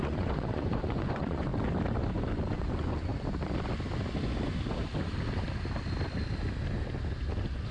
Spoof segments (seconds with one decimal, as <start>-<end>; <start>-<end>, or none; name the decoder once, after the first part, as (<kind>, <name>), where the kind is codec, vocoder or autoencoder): 0.0-1.5 (vocoder, Vocos); 2.1-3.1